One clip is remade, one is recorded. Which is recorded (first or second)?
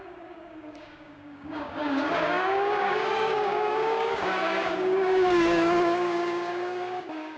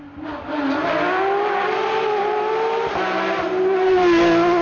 second